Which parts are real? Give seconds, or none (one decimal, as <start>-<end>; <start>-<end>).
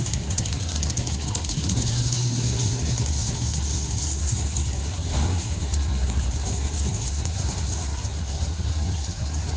none